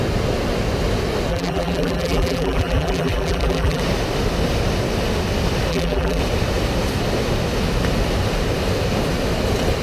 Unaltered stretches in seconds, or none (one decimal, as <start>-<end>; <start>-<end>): 0.0-1.3; 3.8-5.7; 6.2-9.8